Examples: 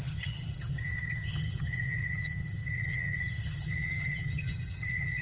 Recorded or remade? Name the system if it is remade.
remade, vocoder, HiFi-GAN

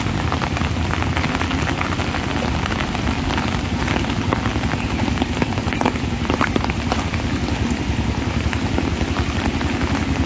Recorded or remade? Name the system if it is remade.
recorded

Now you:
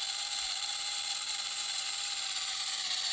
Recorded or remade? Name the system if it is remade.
recorded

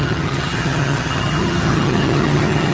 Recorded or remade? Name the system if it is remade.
remade, vocoder, HiFi-GAN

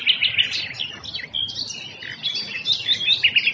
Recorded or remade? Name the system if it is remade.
recorded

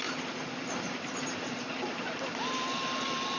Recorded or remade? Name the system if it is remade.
recorded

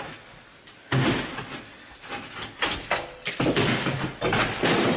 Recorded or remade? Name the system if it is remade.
recorded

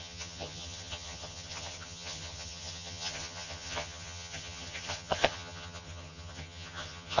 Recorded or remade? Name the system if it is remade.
remade, vocoder, HiFi-GAN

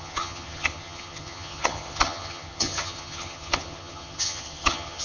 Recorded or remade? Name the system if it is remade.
remade, vocoder, HiFi-GAN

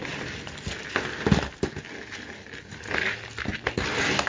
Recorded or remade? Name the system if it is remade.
recorded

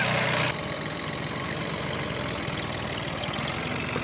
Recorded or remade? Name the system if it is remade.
recorded